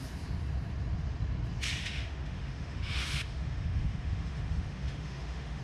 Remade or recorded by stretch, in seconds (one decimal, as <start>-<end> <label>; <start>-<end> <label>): 0.0-1.8 recorded; 1.8-5.6 remade